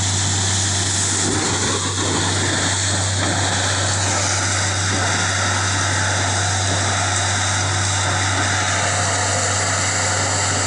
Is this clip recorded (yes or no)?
yes